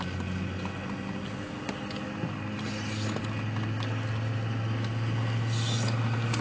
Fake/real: real